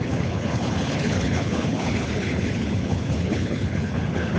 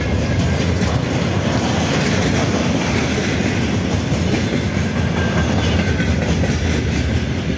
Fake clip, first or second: first